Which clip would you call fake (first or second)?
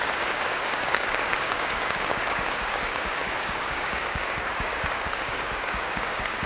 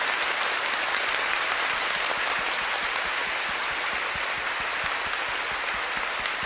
first